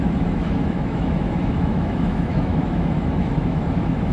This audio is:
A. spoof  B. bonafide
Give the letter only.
A